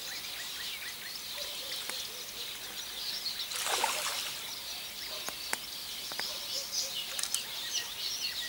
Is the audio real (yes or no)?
yes